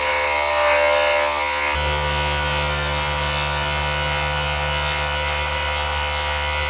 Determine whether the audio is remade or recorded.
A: recorded